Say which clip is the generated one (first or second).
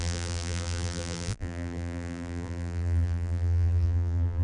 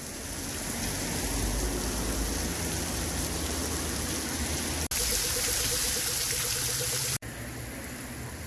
first